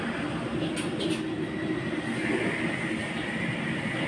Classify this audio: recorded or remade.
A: recorded